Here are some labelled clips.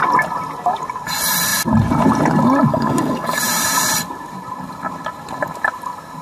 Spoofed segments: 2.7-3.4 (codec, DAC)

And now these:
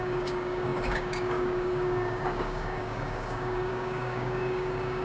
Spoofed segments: 0.0-5.0 (codec, DAC)

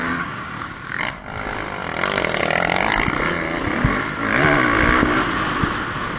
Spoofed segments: 0.0-1.0 (codec, DAC)